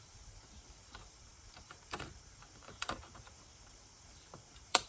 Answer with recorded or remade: remade